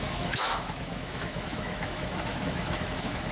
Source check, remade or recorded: remade